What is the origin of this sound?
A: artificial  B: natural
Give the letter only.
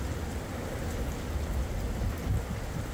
B